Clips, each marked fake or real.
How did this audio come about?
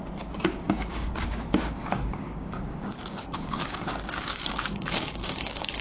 fake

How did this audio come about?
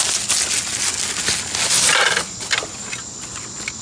real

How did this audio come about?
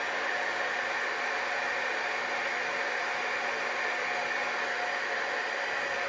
real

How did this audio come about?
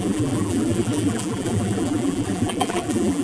fake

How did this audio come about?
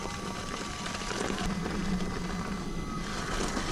real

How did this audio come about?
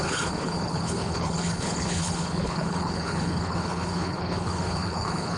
fake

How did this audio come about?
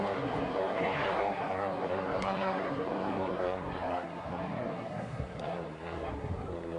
fake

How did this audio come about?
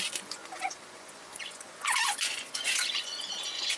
fake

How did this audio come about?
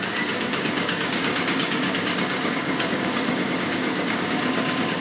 fake